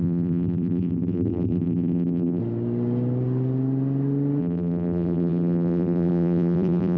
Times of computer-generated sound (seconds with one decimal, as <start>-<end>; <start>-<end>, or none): 0.0-2.4; 4.4-7.0